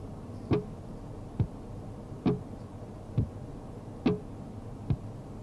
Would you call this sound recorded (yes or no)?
yes